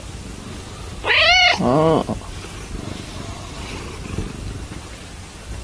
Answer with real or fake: real